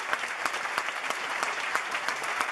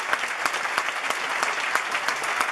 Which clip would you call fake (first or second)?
first